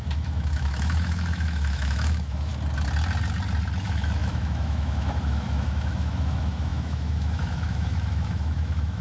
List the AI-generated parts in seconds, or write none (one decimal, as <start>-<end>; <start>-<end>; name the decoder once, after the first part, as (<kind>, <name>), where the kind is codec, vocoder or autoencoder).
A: 0.0-2.5 (autoencoder, DAC-VAE); 3.8-9.0